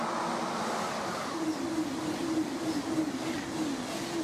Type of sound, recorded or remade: recorded